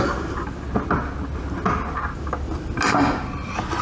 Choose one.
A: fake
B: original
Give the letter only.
B